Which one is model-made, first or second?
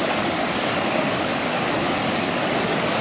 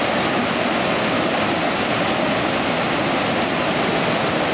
first